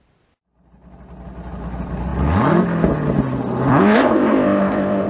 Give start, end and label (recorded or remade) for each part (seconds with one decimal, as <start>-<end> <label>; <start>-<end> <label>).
0.0-3.7 recorded; 3.7-5.1 remade